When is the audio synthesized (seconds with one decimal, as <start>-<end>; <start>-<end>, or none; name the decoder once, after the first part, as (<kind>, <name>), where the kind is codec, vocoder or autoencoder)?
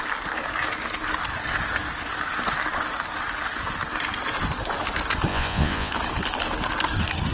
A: 5.3-5.9 (vocoder, Vocos)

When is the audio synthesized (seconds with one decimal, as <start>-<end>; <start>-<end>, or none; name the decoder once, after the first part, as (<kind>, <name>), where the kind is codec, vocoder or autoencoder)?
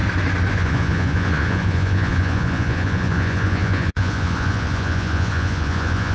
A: 0.5-6.1 (vocoder, Vocos)